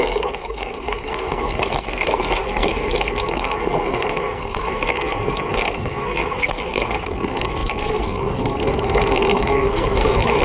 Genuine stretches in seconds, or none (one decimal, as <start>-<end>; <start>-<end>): none